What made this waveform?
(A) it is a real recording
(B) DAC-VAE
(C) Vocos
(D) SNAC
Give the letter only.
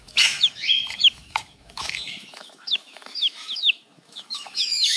B